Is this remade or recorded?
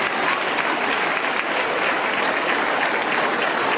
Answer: recorded